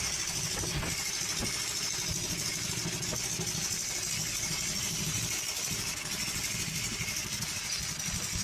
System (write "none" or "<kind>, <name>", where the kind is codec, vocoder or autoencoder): none